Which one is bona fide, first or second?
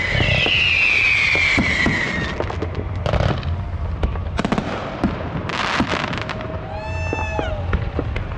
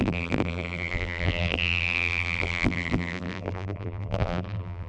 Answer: first